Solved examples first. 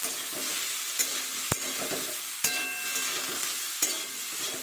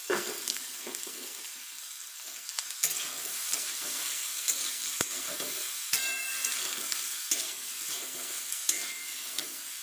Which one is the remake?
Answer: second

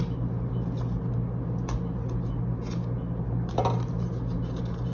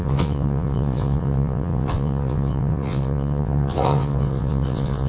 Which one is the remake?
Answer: second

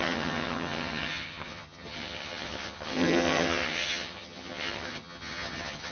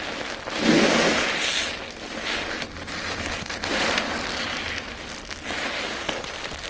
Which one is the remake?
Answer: first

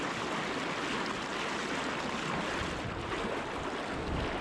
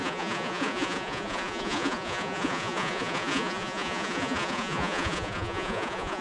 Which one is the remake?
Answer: second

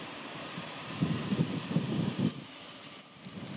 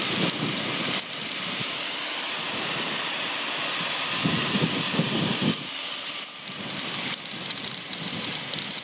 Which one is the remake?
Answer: first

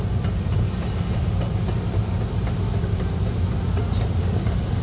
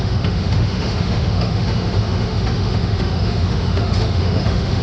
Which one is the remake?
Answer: second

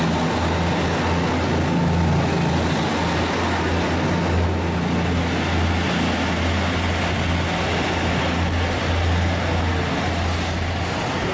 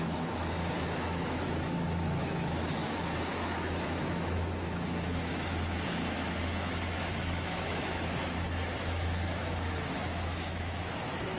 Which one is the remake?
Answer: second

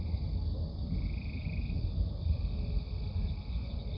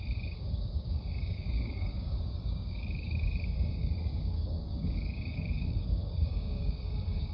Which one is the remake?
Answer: second